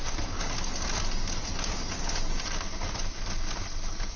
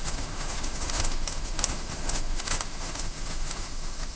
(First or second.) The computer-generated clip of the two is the second